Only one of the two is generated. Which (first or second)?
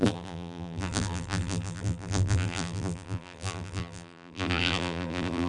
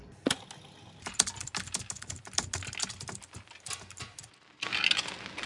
first